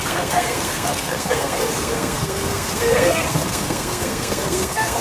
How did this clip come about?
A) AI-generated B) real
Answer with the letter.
A